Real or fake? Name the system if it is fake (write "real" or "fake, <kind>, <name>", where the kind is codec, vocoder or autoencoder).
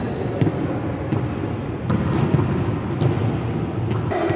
real